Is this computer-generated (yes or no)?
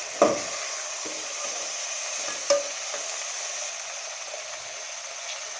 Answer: no